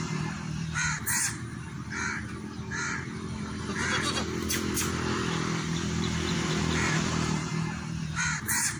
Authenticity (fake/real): fake